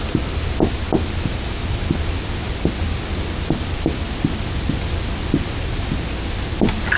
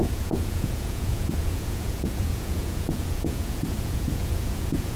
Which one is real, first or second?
first